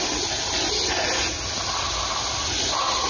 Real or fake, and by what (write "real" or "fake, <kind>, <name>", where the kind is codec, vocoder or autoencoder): real